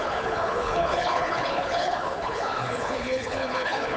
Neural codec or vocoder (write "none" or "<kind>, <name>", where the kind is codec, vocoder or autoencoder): codec, HILCodec